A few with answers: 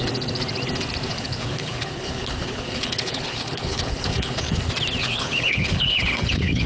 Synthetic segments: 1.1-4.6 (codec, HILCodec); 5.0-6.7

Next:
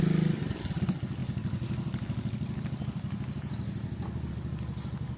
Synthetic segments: none

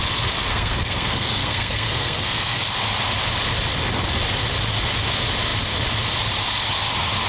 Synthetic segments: 0.5-2.6 (codec, SNAC)

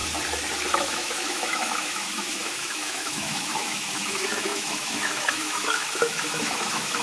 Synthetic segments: 0.7-7.0 (autoencoder, DAC-VAE)

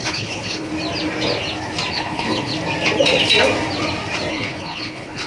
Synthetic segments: 0.0-0.7 (codec, HILCodec); 1.9-2.5; 4.3-5.3

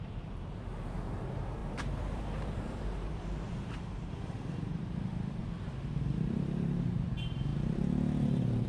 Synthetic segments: 0.0-5.4 (vocoder, BigVGAN v2); 6.2-7.5

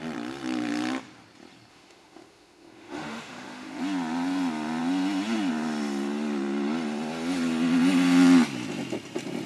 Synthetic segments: 1.7-3.8 (autoencoder, DAC-VAE)

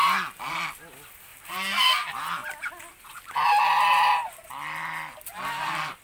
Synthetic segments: 1.3-1.9 (vocoder, BigVGAN v2)